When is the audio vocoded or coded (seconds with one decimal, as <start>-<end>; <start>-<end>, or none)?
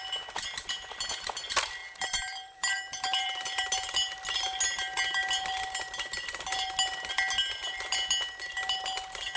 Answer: 1.8-3.6